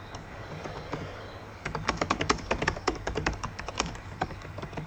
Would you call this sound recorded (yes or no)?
no